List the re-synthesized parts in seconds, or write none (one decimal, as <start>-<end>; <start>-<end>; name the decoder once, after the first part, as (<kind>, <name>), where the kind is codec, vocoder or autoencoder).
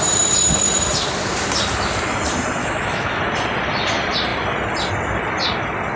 2.6-3.2 (autoencoder, DAC-VAE)